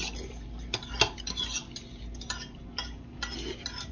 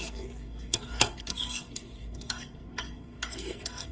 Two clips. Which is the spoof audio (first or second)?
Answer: second